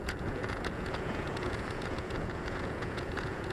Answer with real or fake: fake